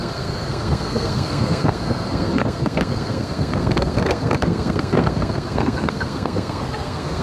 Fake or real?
fake